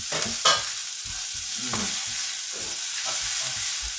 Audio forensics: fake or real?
real